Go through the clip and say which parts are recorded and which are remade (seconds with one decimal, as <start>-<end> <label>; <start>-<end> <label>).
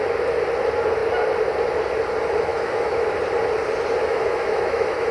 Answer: 0.0-2.5 recorded; 2.5-3.2 remade; 3.2-4.0 recorded; 4.0-5.1 remade